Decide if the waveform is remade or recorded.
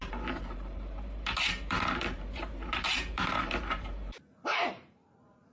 remade